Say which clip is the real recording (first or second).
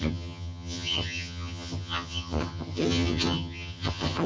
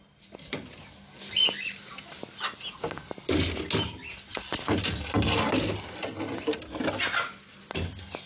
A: second